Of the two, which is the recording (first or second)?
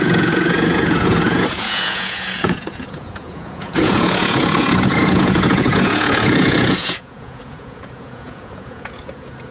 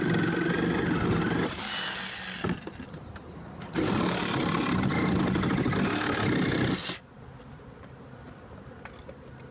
second